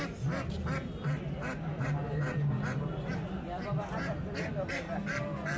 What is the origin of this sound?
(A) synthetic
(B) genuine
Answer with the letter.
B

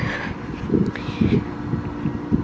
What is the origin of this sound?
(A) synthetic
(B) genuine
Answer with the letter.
B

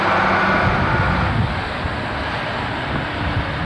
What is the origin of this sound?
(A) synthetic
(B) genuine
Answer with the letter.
B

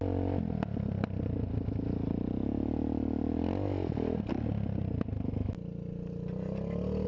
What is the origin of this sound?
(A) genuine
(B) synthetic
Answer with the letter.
A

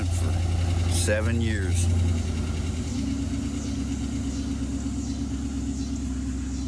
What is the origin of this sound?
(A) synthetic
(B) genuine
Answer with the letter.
B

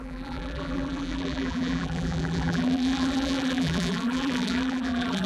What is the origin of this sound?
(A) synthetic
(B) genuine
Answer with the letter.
A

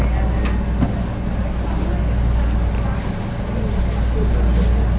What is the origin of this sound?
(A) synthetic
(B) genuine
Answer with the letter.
B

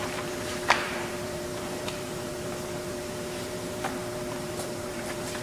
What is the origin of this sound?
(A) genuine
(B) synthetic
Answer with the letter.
B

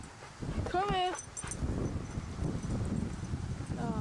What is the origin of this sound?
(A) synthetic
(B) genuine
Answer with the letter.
B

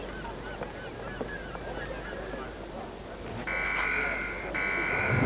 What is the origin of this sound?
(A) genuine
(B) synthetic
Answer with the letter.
A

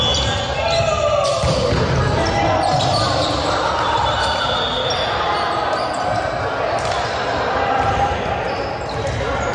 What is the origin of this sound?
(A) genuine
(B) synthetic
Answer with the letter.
A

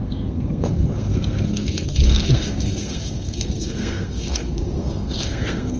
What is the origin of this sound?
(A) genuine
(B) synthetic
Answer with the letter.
B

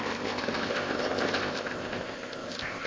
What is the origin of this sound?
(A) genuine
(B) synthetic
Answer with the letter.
B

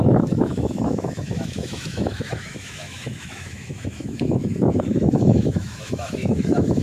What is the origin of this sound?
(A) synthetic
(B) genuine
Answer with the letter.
A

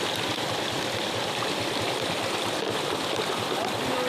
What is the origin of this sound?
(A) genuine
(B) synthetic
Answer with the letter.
B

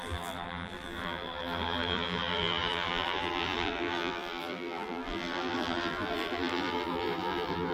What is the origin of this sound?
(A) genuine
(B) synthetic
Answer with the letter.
B